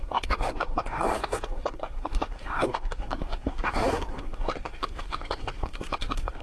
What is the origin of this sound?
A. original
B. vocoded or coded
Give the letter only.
B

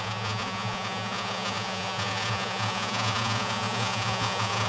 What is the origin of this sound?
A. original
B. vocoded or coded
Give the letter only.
B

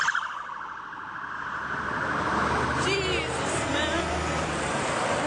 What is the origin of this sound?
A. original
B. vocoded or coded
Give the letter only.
A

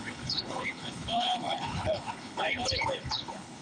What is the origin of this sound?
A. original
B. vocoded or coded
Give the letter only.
B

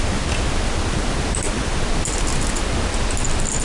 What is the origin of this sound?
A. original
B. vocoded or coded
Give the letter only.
A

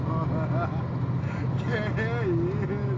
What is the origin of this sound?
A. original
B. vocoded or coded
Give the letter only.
A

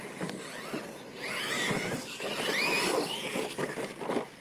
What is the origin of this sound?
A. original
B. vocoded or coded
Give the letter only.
A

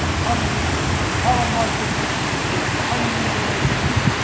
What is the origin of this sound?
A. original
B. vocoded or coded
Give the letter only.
A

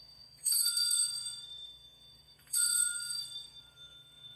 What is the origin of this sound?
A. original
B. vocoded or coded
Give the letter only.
B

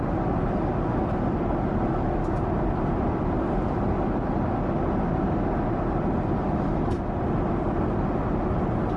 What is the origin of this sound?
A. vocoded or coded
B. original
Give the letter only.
B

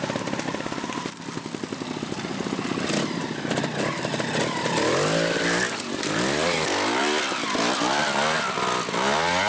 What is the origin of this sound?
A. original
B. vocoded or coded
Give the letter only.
A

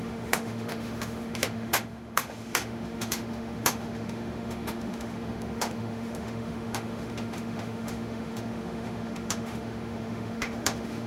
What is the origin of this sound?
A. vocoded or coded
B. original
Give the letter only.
A